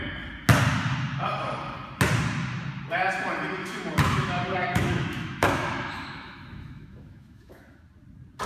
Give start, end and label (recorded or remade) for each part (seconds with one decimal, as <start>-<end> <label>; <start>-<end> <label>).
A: 0.0-3.6 recorded; 3.6-7.8 remade; 7.8-8.5 recorded